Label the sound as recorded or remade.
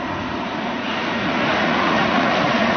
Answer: remade